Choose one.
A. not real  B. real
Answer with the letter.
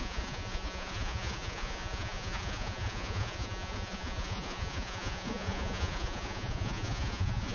A